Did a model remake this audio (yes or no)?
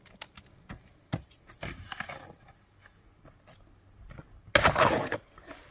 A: no